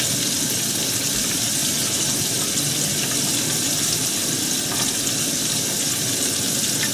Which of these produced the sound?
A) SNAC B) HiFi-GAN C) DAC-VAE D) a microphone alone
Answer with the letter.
D